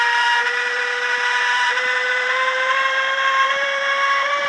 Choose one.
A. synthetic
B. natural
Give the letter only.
A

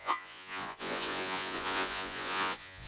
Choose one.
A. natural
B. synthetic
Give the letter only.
B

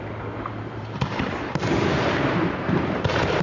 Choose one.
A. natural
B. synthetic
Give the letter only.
B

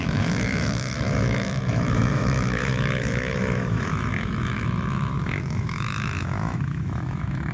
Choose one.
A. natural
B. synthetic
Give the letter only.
B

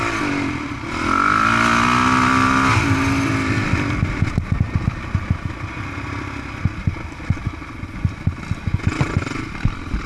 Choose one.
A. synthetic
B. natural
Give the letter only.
B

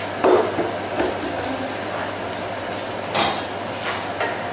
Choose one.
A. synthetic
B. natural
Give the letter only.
B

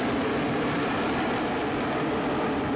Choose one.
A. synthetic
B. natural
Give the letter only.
A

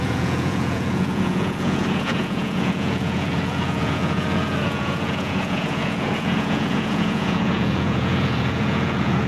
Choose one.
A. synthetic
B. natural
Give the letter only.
A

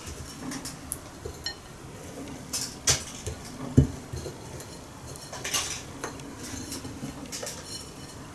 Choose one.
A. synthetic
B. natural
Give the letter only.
B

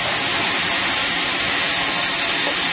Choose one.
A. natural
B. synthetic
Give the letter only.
A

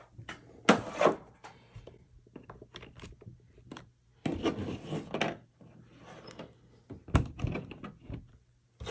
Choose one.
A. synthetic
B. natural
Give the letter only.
B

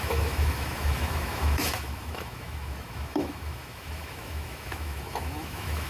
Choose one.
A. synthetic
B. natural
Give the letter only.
A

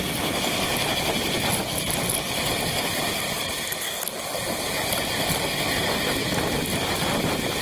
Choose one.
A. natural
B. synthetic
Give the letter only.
A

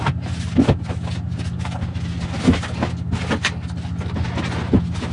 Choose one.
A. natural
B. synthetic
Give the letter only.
A